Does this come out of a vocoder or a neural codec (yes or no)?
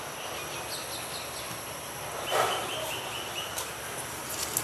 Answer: no